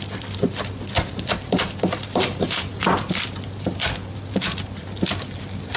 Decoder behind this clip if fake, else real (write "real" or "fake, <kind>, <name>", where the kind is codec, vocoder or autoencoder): real